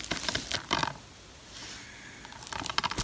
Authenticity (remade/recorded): recorded